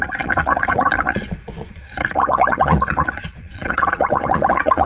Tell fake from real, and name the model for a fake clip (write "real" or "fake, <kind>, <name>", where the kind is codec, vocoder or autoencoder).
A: fake, vocoder, Vocos